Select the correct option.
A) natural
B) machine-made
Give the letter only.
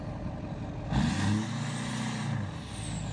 A